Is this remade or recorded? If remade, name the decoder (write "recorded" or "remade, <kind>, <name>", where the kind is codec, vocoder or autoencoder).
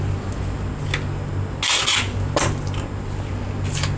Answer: recorded